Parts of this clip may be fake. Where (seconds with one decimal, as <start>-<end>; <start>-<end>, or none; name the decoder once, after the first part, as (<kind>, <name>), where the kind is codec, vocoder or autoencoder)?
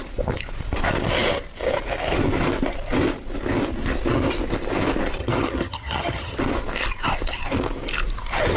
5.2-6.4 (vocoder, HiFi-GAN)